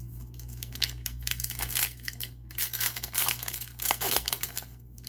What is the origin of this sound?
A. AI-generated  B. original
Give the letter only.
A